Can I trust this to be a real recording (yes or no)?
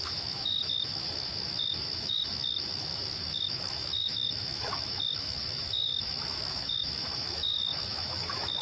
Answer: no